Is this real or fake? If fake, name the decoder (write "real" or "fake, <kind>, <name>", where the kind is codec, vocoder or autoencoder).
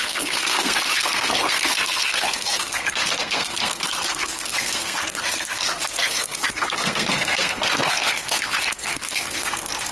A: fake, codec, SNAC